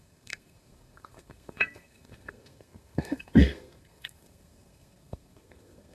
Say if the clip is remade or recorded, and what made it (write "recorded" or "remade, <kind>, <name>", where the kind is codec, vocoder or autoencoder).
remade, codec, SNAC